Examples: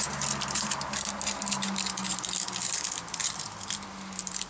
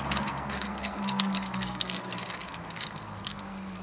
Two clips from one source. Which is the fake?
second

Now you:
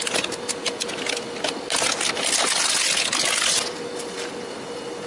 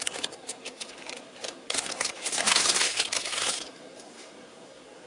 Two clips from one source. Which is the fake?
second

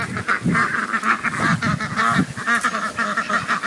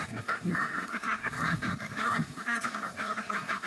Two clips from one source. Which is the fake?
second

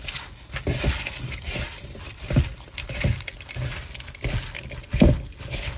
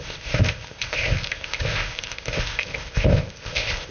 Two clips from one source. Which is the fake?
second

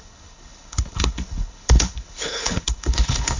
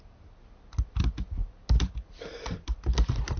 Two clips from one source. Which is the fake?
first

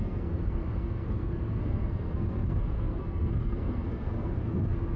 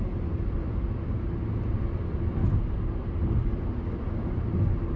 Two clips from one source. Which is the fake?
first